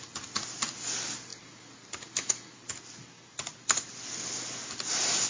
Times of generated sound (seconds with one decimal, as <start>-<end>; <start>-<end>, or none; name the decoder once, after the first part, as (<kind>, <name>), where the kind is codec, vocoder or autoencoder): none